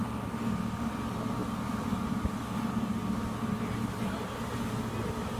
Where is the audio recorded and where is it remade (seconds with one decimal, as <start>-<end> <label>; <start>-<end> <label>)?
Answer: 0.0-3.0 remade; 3.0-4.1 recorded; 4.1-5.4 remade